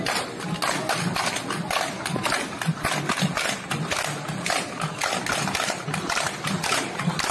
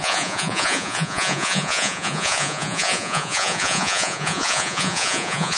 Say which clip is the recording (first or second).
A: first